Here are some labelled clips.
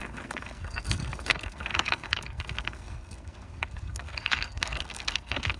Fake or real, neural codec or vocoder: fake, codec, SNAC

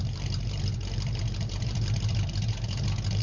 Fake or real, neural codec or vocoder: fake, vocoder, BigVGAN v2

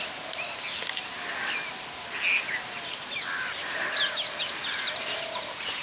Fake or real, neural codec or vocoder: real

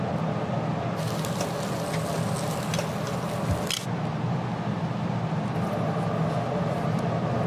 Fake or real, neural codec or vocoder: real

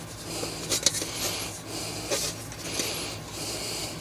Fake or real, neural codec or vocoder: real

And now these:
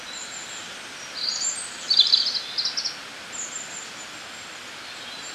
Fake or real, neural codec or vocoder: real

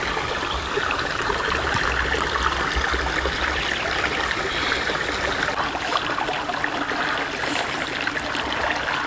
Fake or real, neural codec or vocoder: real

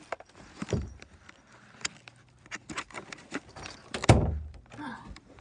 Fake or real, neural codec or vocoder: real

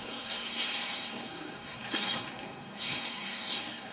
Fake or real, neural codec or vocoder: fake, codec, SNAC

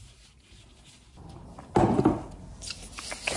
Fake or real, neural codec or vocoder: real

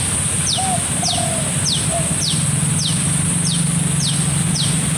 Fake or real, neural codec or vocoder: real